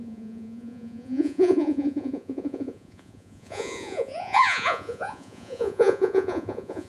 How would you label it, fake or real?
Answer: fake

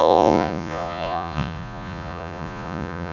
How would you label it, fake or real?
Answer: fake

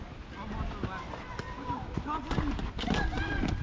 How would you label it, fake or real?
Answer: real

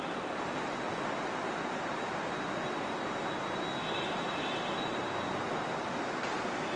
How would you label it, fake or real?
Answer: real